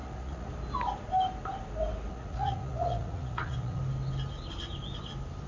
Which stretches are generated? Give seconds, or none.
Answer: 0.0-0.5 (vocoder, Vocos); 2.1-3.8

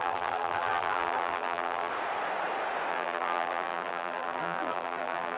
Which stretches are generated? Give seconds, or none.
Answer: 0.0-1.9 (vocoder, BigVGAN v2); 2.9-5.4

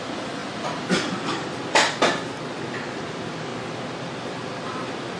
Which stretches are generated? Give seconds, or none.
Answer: 0.0-3.5 (vocoder, BigVGAN v2); 4.0-5.2

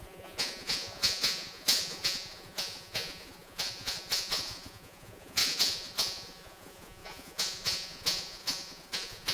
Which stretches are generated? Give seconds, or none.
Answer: 0.0-9.3 (vocoder, Vocos)

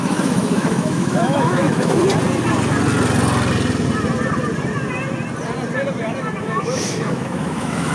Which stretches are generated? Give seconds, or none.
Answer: 0.0-2.0 (autoencoder, DAC-VAE); 6.4-7.9

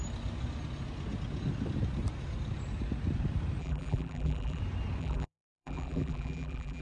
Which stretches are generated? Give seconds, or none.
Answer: 3.6-4.6 (vocoder, BigVGAN v2); 5.0-6.8

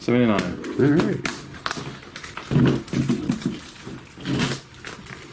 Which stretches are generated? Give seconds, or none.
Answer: none

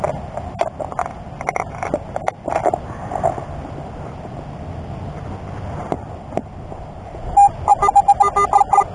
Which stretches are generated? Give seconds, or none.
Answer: none